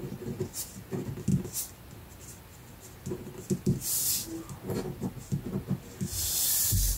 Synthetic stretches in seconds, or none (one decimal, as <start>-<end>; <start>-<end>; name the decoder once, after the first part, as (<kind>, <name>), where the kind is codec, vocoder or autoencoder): none